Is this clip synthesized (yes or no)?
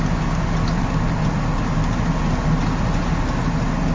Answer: no